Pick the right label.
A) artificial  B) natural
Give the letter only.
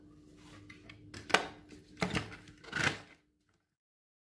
B